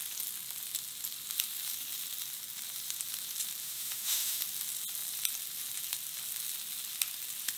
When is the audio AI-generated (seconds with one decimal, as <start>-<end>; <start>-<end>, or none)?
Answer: 3.6-4.4